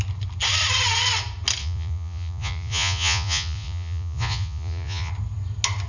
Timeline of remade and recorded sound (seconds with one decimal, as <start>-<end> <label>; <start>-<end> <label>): 0.0-1.6 recorded; 1.6-5.1 remade; 5.1-5.9 recorded